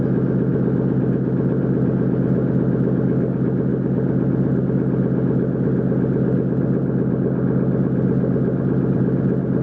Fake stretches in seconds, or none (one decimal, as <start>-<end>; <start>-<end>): none